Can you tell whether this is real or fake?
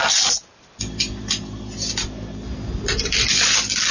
real